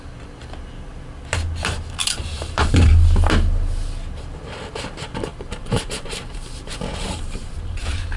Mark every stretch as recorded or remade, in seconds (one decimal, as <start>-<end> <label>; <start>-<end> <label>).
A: 0.0-2.0 recorded; 2.0-2.9 remade; 2.9-5.3 recorded; 5.3-8.2 remade